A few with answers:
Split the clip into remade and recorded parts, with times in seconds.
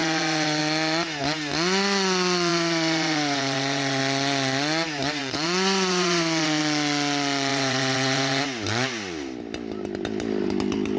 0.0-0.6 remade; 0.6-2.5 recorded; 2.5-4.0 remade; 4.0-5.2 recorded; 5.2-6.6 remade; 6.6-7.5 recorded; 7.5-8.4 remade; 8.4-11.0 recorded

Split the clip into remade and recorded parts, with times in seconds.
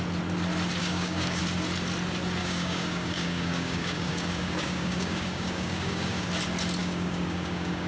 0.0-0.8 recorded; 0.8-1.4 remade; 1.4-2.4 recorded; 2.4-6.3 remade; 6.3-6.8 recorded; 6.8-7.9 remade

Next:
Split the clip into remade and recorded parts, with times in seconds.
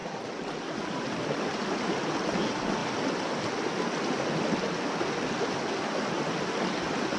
0.0-1.6 remade; 1.6-2.3 recorded; 2.3-2.8 remade; 2.8-7.2 recorded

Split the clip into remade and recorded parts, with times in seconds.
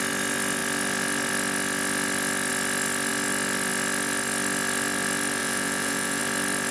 0.0-5.4 recorded; 5.4-6.2 remade; 6.2-6.7 recorded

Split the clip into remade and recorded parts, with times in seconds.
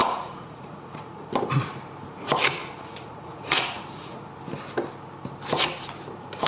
0.0-1.3 remade; 1.3-2.6 recorded; 2.6-4.3 remade; 4.3-6.5 recorded